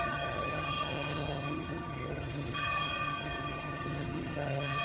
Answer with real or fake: fake